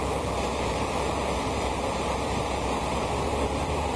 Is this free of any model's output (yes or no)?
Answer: no